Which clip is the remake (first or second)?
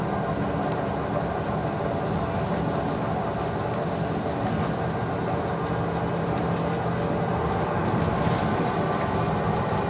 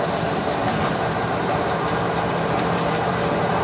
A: second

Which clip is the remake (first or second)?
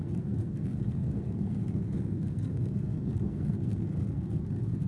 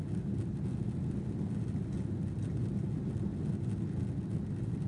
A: first